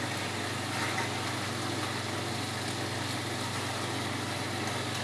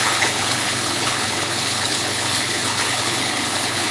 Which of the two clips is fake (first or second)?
second